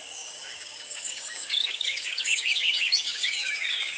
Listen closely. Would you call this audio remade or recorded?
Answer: remade